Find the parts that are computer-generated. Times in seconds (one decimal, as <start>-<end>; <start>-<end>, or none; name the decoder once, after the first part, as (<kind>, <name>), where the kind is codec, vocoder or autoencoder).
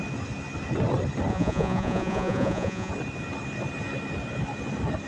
1.3-2.9 (vocoder, Vocos)